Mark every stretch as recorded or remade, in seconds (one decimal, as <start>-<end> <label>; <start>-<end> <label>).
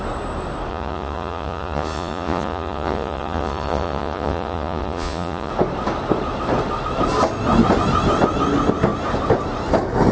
0.0-0.7 recorded; 0.7-5.5 remade; 5.5-10.1 recorded